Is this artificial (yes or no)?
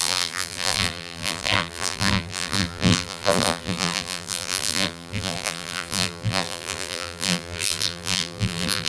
yes